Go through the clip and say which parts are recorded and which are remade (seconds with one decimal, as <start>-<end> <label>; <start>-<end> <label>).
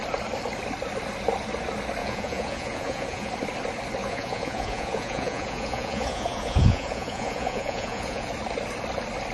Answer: 0.0-2.0 recorded; 2.0-3.3 remade; 3.3-4.0 recorded; 4.0-8.3 remade; 8.3-9.3 recorded